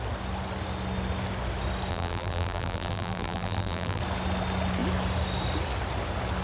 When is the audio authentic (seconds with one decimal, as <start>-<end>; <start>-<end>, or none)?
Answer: 0.0-1.9; 4.0-6.4